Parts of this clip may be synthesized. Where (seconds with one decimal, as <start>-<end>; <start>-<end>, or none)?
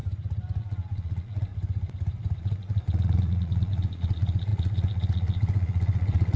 0.6-1.5; 2.4-6.4